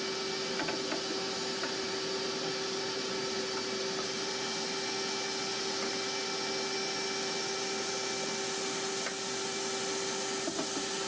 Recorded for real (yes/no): yes